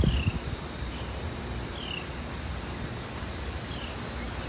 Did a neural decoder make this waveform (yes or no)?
no